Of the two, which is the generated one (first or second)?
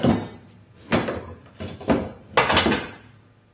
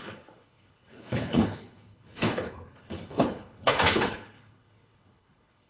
second